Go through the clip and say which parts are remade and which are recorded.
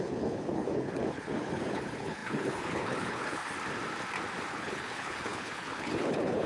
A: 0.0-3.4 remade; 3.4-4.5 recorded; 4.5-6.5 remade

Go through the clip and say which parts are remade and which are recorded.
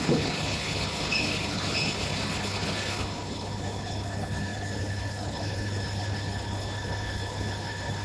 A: 0.0-8.0 remade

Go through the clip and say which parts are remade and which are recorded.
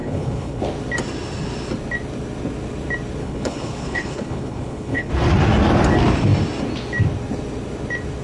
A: 0.0-0.6 remade; 0.6-3.2 recorded; 3.2-5.1 remade; 5.1-8.2 recorded